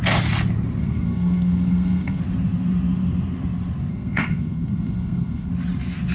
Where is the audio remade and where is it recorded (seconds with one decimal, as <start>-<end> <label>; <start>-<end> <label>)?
0.0-0.8 recorded; 0.8-2.2 remade; 2.2-3.9 recorded; 3.9-5.5 remade; 5.5-6.1 recorded